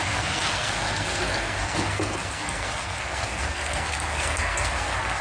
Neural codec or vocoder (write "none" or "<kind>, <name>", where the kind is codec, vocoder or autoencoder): codec, SNAC